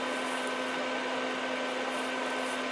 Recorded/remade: recorded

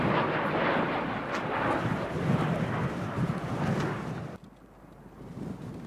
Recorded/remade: recorded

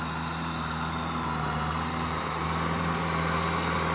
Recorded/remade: recorded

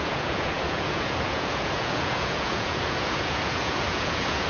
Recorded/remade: remade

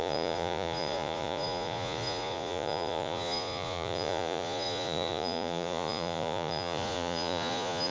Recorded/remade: remade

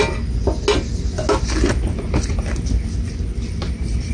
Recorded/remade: recorded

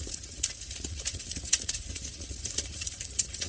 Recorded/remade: remade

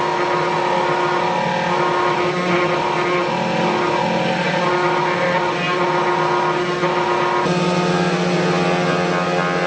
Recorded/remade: recorded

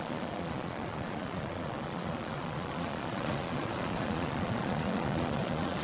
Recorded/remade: remade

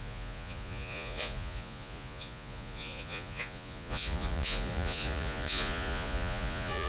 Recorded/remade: remade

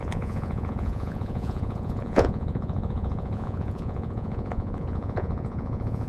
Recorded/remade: remade